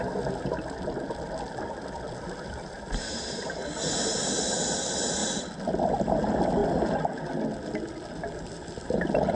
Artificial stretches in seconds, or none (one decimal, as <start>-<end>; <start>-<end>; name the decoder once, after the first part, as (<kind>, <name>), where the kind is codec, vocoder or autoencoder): none